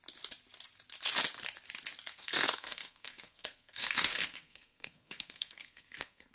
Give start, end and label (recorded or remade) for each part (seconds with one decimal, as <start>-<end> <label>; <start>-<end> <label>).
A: 0.0-2.1 recorded; 2.1-6.3 remade